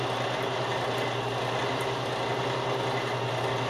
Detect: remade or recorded recorded